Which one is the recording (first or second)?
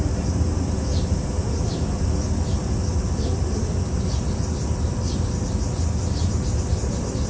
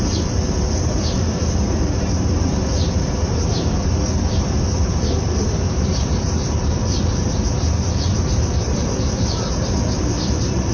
first